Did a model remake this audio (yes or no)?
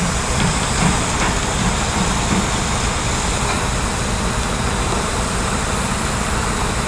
yes